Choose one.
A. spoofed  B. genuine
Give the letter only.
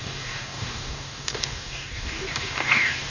A